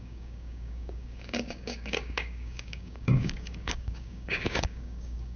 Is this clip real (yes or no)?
no